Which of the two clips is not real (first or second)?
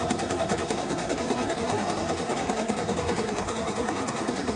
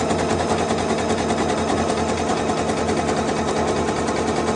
first